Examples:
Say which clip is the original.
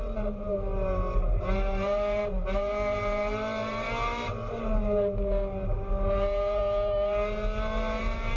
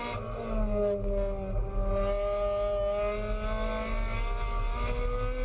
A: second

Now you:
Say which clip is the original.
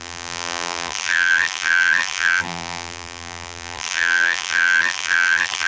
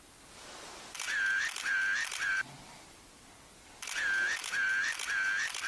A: second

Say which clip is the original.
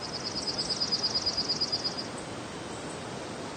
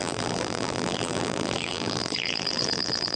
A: first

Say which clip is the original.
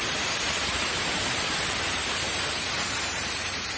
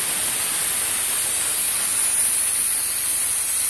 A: second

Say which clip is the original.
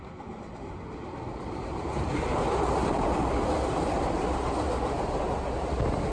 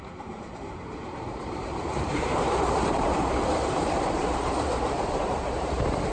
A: first